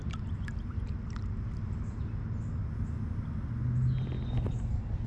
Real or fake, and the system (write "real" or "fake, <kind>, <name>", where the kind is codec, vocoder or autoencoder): real